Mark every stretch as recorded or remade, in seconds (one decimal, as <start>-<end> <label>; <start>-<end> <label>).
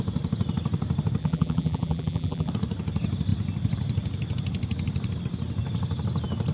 0.0-1.2 recorded; 1.2-2.5 remade; 2.5-6.5 recorded